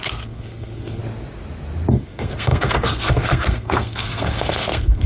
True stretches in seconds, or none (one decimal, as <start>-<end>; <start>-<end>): 1.0-1.9

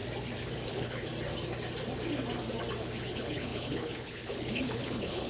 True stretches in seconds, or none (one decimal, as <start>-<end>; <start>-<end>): 0.0-0.7; 1.1-2.8

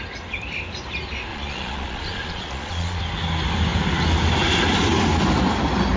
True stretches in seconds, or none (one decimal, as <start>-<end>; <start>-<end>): 0.0-1.3; 3.0-6.0

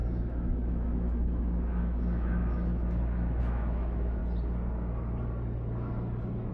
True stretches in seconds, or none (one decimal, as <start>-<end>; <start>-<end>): 4.2-6.5

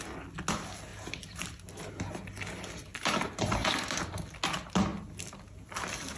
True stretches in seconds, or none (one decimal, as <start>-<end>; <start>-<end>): 0.0-0.9; 1.9-2.9; 4.2-6.2

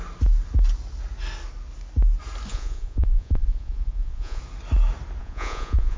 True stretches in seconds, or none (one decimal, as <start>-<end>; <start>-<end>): 0.0-2.5; 4.4-5.2

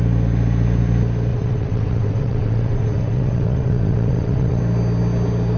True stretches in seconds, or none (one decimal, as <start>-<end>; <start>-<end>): 0.0-1.3; 4.6-5.6